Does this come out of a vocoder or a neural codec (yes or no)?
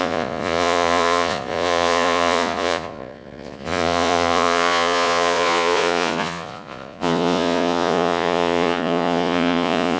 yes